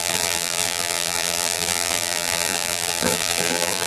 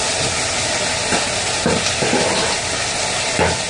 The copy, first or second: first